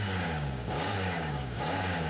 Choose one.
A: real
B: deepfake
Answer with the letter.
B